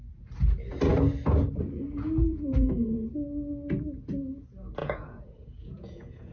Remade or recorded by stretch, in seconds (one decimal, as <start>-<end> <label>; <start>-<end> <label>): 0.0-2.2 recorded; 2.2-3.1 remade; 3.1-4.8 recorded; 4.8-6.3 remade